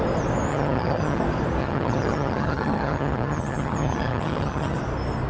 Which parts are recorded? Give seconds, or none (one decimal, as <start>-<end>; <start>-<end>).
0.0-0.5; 1.2-1.6; 4.8-5.3